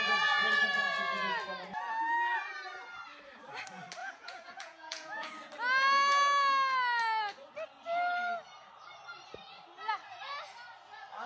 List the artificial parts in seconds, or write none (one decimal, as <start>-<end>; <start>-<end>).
4.0-5.3